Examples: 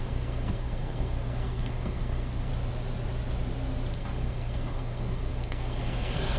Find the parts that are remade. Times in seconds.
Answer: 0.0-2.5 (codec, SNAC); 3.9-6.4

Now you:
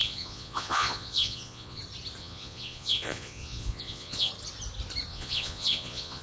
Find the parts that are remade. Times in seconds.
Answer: 0.0-1.8 (vocoder, Vocos); 2.2-4.3; 5.1-6.2

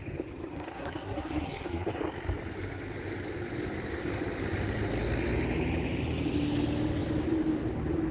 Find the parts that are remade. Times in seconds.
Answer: 0.5-2.0 (codec, SNAC)